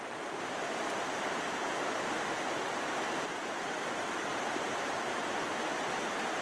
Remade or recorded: remade